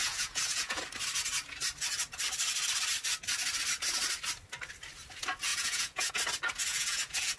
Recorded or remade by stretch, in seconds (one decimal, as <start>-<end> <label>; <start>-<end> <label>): 0.0-0.8 remade; 0.8-5.5 recorded; 5.5-6.1 remade; 6.1-6.7 recorded; 6.7-7.4 remade